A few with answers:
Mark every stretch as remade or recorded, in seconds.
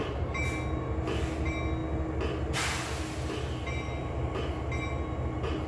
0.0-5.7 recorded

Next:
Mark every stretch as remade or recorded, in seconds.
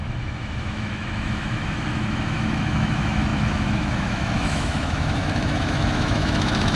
0.0-6.8 remade